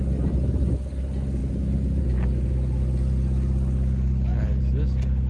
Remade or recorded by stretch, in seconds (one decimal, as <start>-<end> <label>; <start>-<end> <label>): 0.0-5.3 recorded